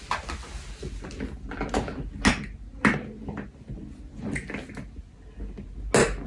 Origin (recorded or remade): recorded